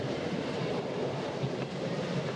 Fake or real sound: fake